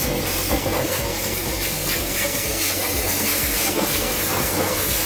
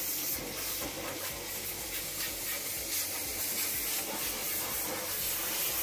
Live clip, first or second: second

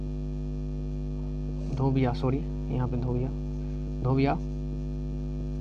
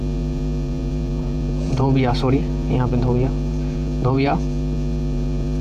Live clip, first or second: first